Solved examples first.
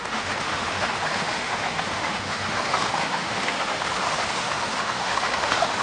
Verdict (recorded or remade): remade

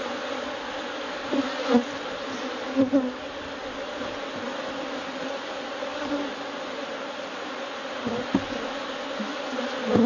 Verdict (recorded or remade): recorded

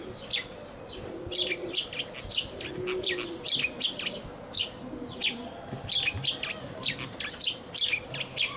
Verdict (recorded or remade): recorded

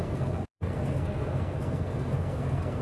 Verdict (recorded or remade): remade